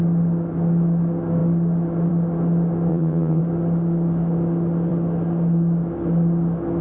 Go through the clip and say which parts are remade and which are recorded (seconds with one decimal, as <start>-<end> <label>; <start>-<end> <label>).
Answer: 0.0-2.9 recorded; 2.9-3.4 remade; 3.4-6.8 recorded